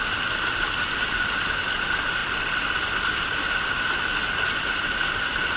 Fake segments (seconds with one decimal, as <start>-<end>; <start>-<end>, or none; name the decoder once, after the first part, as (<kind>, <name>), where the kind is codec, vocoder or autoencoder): none